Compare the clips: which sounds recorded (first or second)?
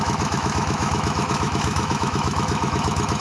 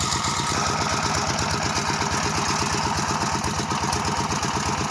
second